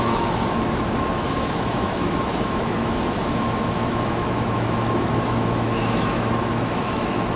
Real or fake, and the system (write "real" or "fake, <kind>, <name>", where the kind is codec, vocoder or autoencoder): fake, autoencoder, DAC-VAE